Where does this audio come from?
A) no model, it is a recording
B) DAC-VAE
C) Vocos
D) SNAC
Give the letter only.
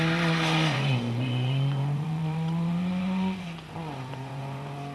C